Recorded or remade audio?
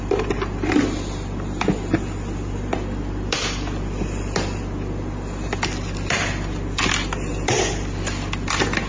recorded